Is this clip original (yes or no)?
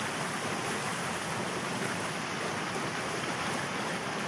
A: yes